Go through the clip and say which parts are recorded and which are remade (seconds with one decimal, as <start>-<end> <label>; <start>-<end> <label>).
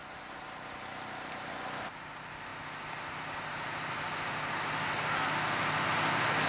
0.0-1.5 remade; 1.5-6.5 recorded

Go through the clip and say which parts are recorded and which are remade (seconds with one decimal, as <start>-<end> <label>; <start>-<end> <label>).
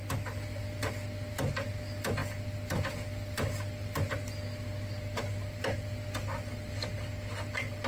0.0-7.9 recorded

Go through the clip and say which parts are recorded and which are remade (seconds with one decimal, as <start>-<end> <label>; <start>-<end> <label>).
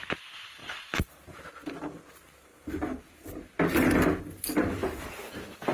0.0-0.6 recorded; 0.6-1.5 remade; 1.5-4.8 recorded; 4.8-5.3 remade; 5.3-5.7 recorded